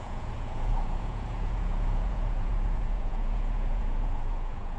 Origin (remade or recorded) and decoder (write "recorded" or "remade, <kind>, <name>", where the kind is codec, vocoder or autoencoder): remade, vocoder, Vocos